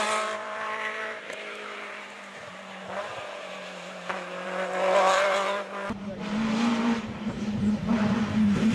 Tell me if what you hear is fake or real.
fake